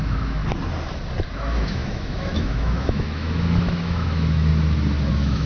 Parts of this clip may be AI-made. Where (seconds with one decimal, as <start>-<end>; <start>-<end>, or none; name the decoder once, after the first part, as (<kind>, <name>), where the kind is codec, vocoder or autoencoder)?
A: 0.0-0.4 (autoencoder, DAC-VAE); 1.3-4.5; 5.1-5.5